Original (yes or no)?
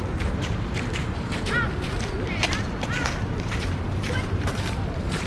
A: no